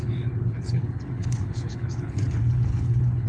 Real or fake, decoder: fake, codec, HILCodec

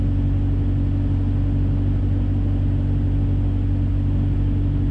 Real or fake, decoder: real